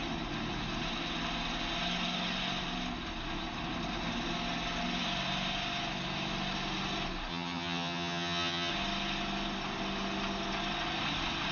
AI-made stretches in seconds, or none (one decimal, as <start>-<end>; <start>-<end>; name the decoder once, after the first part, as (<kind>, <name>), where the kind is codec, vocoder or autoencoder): 7.3-8.7 (vocoder, HiFi-GAN)